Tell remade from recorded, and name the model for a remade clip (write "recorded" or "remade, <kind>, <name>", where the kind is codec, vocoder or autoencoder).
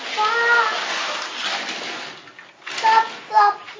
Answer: recorded